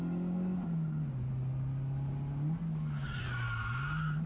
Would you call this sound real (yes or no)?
yes